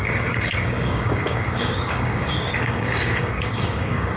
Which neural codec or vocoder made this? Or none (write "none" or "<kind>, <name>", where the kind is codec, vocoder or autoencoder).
codec, DAC